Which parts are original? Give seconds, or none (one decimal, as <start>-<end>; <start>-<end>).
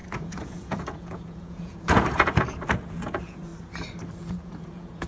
3.5-4.2